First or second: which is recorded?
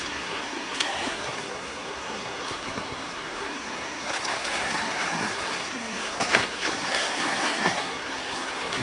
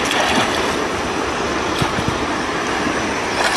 second